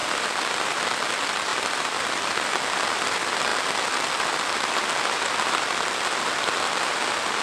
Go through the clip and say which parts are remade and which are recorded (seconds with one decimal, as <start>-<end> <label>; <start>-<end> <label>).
0.0-0.8 remade; 0.8-1.5 recorded; 1.5-3.0 remade; 3.0-3.5 recorded; 3.5-7.0 remade; 7.0-7.4 recorded